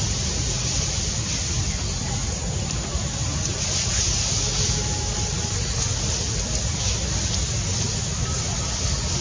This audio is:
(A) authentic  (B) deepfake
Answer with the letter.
A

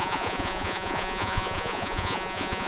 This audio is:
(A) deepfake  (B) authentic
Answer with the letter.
A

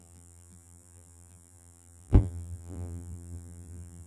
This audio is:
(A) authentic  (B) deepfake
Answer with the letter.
B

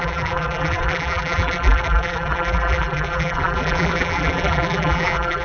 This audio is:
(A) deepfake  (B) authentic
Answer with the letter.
A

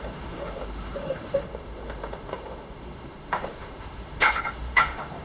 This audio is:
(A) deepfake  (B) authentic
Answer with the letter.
A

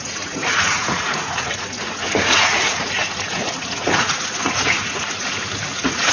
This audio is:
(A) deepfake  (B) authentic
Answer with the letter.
A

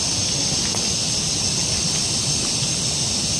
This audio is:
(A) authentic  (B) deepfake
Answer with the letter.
A